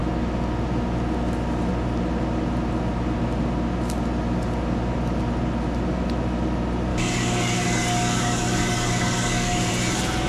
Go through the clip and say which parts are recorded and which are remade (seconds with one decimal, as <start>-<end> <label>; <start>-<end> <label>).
0.0-6.9 recorded; 6.9-9.7 remade; 9.7-10.3 recorded